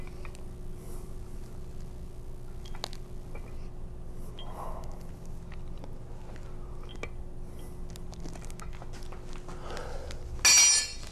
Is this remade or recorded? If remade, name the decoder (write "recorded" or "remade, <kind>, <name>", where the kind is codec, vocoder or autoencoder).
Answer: recorded